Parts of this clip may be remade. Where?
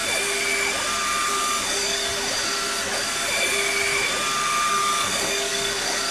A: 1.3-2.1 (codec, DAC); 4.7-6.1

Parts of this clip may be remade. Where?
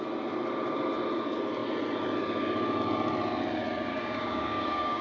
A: 3.9-5.0 (codec, DAC)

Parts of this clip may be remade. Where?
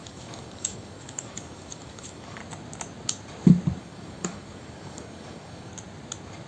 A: 0.0-2.4 (codec, DAC); 3.8-5.7